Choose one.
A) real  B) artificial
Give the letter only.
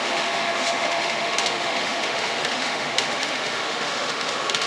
B